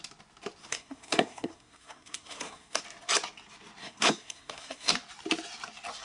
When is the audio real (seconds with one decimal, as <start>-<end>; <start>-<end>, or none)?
0.0-0.6; 2.8-3.8; 4.9-6.0

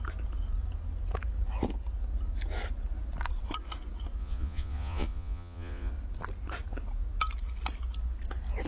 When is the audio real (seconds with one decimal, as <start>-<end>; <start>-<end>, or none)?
0.0-4.2; 5.9-8.7

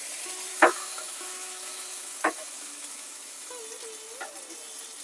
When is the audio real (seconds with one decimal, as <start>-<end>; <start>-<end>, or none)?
0.0-0.5; 3.5-5.0

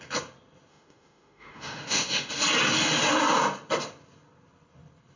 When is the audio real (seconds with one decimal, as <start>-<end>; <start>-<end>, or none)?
0.0-0.7; 2.3-5.2

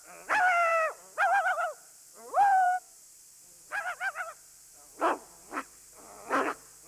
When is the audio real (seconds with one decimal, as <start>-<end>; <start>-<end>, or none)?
0.0-2.5; 6.3-6.9

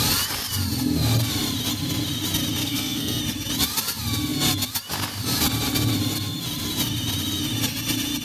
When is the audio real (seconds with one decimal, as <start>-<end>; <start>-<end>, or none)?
0.0-2.6; 3.2-8.2

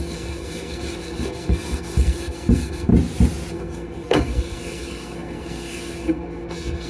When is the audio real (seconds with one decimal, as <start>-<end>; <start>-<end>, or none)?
2.9-3.5

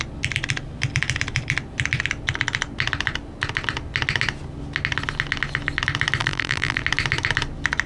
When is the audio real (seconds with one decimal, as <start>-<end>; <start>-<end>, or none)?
0.0-6.2; 6.8-7.9